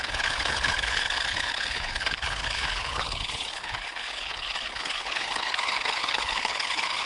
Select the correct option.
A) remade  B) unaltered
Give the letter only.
A